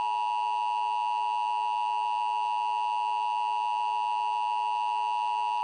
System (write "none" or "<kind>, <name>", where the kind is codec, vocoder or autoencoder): none